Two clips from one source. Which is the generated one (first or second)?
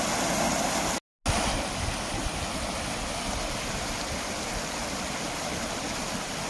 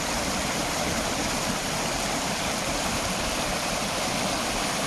second